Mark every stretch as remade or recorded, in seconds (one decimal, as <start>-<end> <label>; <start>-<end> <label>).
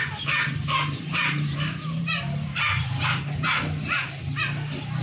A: 0.0-3.0 remade; 3.0-5.0 recorded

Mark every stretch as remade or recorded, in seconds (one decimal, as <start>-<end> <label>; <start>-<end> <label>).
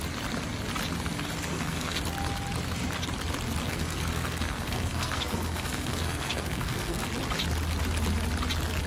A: 0.0-1.5 recorded; 1.5-2.0 remade; 2.0-3.7 recorded; 3.7-7.1 remade; 7.1-8.9 recorded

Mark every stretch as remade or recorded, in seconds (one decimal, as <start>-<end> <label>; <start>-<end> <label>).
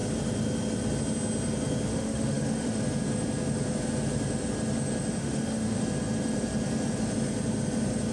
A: 0.0-1.9 recorded; 1.9-2.8 remade; 2.8-5.2 recorded; 5.2-5.8 remade; 5.8-8.1 recorded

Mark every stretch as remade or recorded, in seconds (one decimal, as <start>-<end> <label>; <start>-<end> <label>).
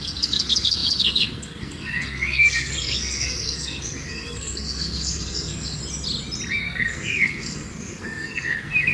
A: 0.0-5.8 remade; 5.8-6.5 recorded; 6.5-8.9 remade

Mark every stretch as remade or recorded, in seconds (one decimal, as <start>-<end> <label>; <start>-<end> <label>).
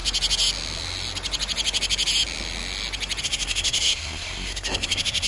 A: 0.0-3.2 recorded; 3.2-5.3 remade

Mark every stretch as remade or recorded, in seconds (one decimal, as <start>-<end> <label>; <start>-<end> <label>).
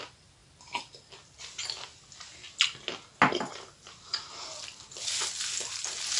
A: 0.0-6.2 recorded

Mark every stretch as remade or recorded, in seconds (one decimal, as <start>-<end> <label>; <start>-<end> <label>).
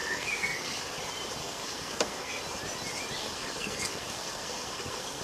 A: 0.0-0.8 remade; 0.8-1.4 recorded; 1.4-2.4 remade; 2.4-3.2 recorded; 3.2-5.2 remade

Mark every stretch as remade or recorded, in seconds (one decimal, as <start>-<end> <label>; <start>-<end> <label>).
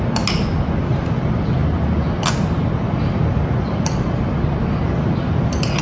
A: 0.0-5.8 recorded